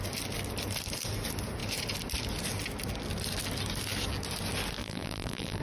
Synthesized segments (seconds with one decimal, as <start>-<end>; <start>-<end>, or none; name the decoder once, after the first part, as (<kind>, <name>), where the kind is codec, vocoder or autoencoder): 4.8-5.6 (vocoder, BigVGAN v2)